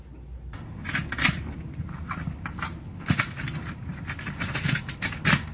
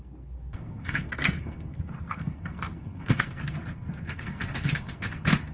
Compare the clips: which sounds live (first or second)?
first